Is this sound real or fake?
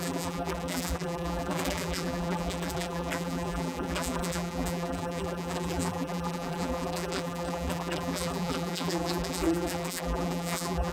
fake